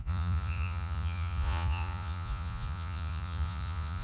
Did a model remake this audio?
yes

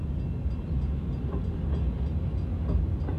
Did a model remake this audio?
no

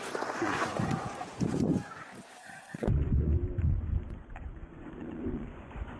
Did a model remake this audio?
yes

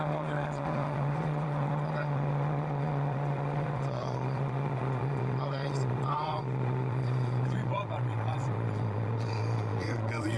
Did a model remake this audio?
yes